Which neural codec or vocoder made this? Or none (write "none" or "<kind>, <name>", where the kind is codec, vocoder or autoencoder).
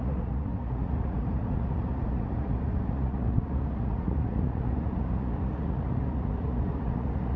vocoder, Vocos